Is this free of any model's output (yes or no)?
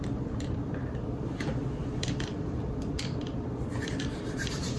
no